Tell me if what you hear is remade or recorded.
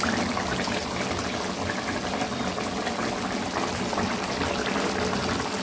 recorded